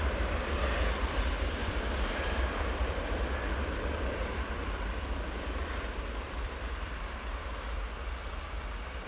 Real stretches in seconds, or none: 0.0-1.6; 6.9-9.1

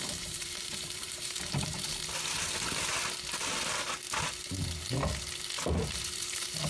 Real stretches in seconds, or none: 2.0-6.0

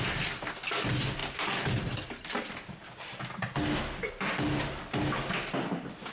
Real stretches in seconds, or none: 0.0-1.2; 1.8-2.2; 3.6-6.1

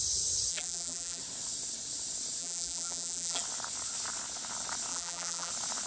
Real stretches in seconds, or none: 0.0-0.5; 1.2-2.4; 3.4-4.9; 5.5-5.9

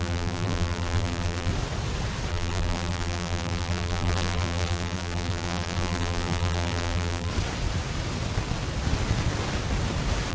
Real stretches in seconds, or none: 1.5-2.3; 7.3-10.3